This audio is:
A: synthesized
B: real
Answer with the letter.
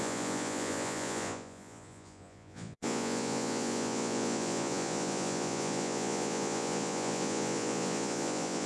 A